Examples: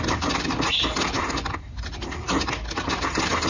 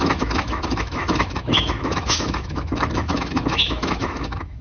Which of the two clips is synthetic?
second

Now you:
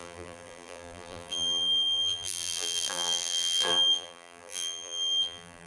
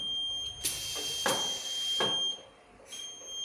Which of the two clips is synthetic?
first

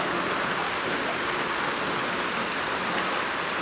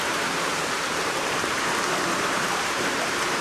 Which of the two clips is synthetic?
second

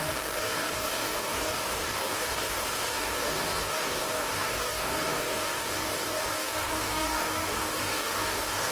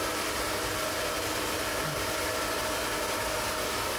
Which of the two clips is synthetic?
first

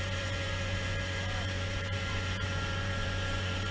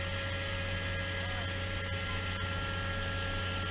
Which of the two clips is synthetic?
first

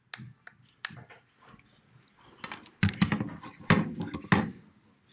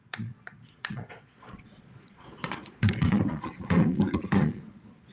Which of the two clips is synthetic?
second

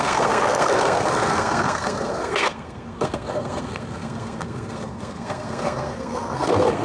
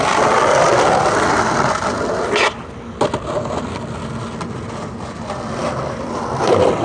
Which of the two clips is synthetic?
first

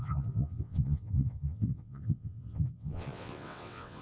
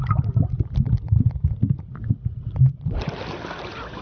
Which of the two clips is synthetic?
first